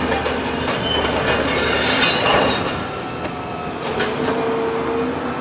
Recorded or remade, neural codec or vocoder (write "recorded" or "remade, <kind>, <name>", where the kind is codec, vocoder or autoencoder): recorded